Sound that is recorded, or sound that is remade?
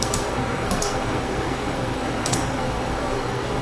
remade